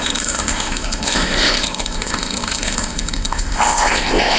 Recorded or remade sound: remade